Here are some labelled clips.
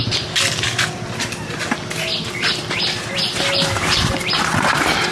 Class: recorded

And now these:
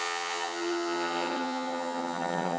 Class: remade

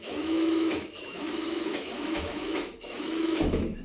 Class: remade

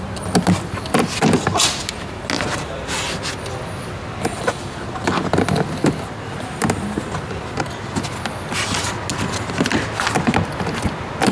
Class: recorded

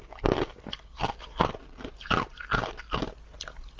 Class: recorded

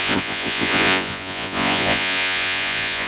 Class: remade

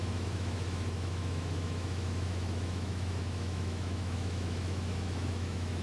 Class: remade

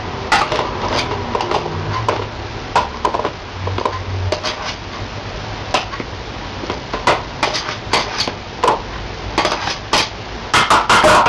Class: recorded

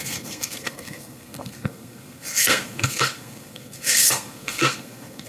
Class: remade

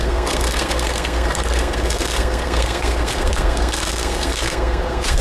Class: remade